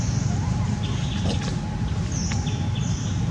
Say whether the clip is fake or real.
real